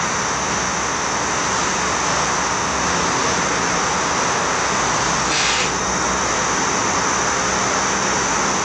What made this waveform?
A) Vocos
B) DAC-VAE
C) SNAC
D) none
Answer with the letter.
D